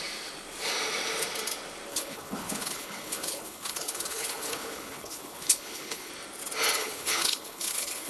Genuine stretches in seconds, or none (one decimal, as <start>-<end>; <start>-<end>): 0.0-1.9; 6.1-6.8